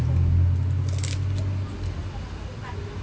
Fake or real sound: real